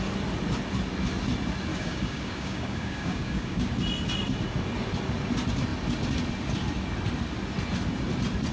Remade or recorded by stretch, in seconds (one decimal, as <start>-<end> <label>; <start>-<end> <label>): 0.0-1.7 recorded; 1.7-3.7 remade; 3.7-8.5 recorded